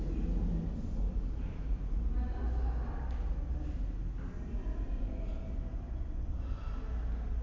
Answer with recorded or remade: recorded